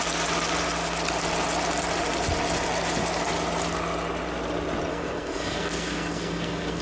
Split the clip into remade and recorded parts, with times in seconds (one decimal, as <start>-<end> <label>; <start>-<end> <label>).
0.0-4.9 recorded; 4.9-6.8 remade